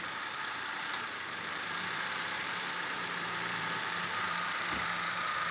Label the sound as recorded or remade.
remade